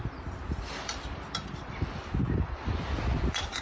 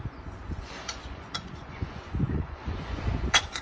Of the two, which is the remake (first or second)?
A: second